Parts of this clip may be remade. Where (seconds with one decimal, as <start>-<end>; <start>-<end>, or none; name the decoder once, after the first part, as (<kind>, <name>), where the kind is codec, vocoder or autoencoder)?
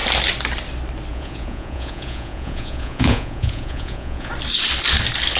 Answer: 1.1-4.3 (vocoder, Vocos)